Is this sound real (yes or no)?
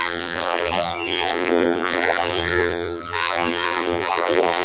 no